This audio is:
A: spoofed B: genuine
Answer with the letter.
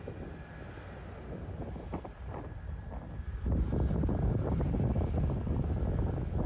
B